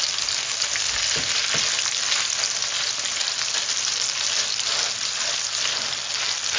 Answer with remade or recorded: recorded